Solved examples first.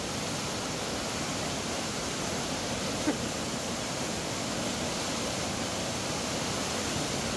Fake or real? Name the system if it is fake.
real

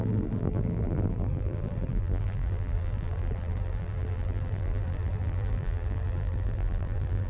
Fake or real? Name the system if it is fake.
fake, vocoder, BigVGAN v2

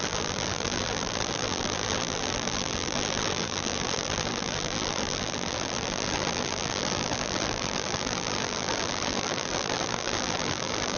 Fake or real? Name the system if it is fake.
fake, vocoder, BigVGAN v2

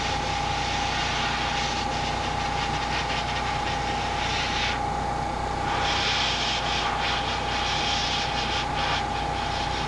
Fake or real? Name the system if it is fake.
real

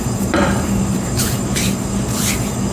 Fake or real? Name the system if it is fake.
fake, vocoder, BigVGAN v2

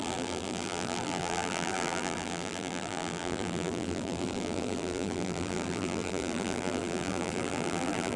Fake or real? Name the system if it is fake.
fake, vocoder, BigVGAN v2